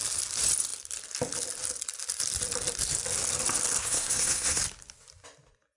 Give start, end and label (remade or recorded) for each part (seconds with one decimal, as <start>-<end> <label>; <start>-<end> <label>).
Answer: 0.0-3.8 recorded; 3.8-4.6 remade; 4.6-5.8 recorded